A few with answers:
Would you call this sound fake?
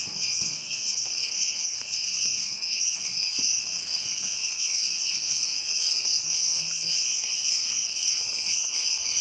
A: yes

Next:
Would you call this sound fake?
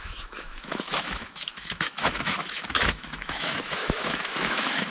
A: yes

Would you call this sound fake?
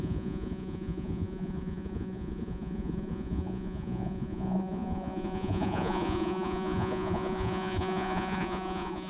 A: yes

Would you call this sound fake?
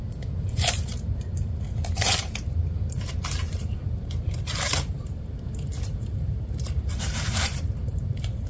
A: yes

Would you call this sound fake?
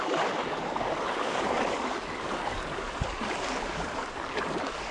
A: yes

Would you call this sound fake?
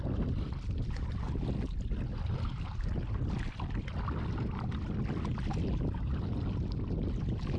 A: no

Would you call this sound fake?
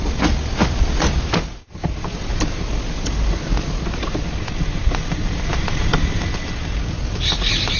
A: no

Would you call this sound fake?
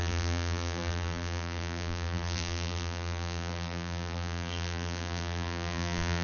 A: yes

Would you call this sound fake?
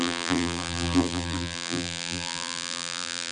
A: yes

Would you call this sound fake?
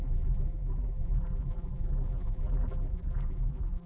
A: yes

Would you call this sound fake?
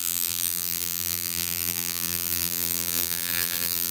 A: yes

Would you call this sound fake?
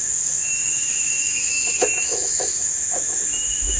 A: yes